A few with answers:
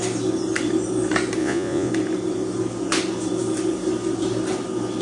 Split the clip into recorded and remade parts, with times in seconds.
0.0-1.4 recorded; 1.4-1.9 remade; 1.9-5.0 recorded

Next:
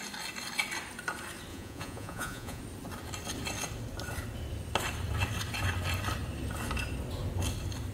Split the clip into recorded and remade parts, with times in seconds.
0.0-1.5 recorded; 1.5-2.6 remade; 2.6-7.9 recorded

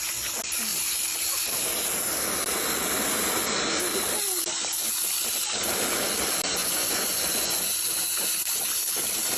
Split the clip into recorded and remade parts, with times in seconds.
0.0-6.6 recorded; 6.6-8.5 remade; 8.5-9.4 recorded

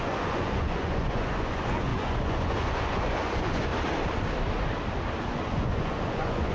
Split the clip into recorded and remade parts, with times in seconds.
0.0-3.7 remade; 3.7-5.2 recorded; 5.2-6.5 remade

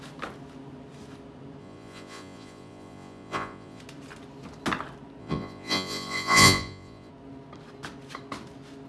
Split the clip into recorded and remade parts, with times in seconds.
0.0-1.6 recorded; 1.6-3.8 remade; 3.8-5.2 recorded; 5.2-7.1 remade; 7.1-8.9 recorded